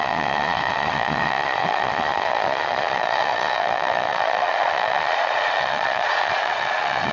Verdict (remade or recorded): remade